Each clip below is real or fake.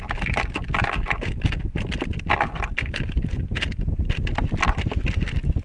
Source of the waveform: real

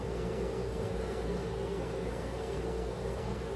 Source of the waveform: fake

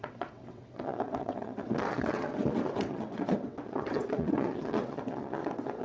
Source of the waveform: fake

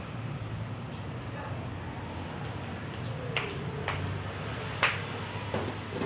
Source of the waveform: real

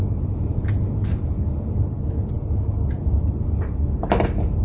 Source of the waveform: real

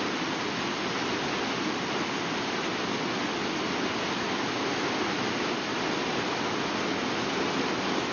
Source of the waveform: real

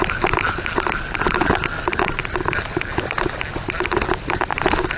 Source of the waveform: real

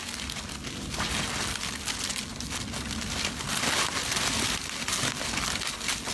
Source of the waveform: real